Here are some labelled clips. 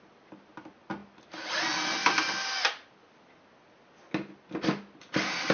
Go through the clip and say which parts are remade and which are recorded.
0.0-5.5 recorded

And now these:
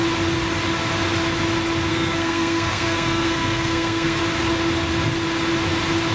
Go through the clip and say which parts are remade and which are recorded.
0.0-1.9 recorded; 1.9-4.2 remade; 4.2-6.1 recorded

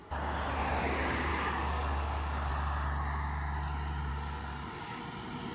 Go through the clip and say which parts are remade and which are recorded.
0.0-1.3 recorded; 1.3-2.5 remade; 2.5-4.1 recorded; 4.1-5.0 remade; 5.0-5.5 recorded

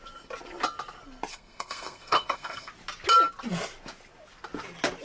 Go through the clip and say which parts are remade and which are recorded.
0.0-1.3 recorded; 1.3-2.7 remade; 2.7-5.0 recorded

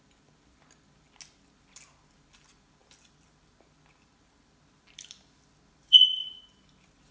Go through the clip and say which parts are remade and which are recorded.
0.0-7.1 recorded

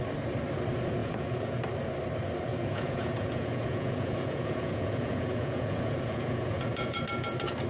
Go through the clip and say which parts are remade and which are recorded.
0.0-1.0 recorded; 1.0-1.6 remade; 1.6-2.5 recorded; 2.5-7.0 remade; 7.0-7.7 recorded